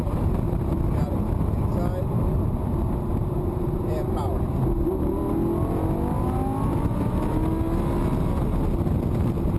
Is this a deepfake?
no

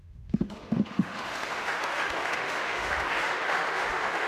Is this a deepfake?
yes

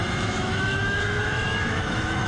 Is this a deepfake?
yes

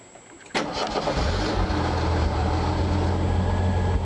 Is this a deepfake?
no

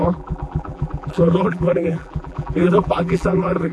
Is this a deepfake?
yes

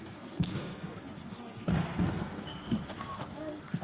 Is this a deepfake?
yes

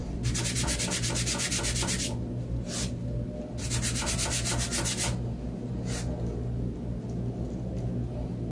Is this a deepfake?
no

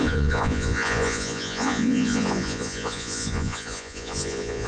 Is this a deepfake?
yes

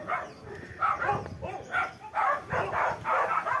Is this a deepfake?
no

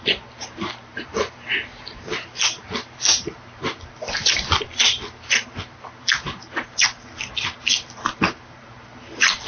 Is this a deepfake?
yes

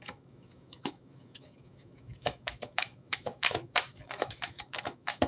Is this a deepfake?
yes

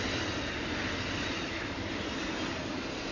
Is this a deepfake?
no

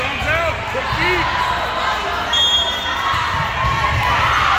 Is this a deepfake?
no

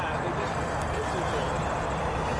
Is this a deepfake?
no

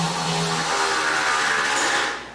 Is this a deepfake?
no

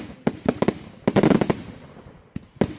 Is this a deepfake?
no